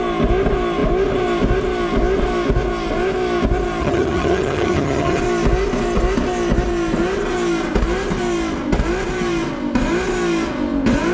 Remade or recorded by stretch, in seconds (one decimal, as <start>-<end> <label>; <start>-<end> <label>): 0.0-3.8 recorded; 3.8-5.2 remade; 5.2-11.1 recorded